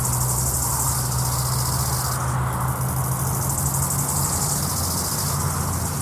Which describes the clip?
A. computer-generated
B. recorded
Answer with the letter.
B